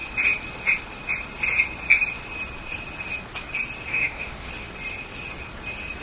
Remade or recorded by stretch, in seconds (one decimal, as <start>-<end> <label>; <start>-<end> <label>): 0.0-3.9 recorded; 3.9-4.5 remade; 4.5-6.0 recorded